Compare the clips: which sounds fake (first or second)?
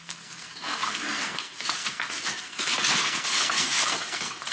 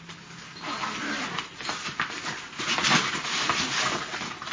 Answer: first